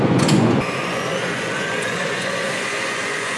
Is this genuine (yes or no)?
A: no